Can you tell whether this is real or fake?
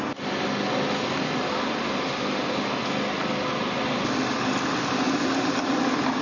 real